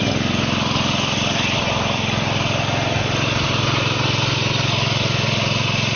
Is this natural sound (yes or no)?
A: yes